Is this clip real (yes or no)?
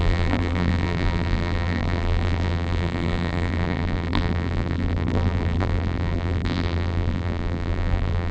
no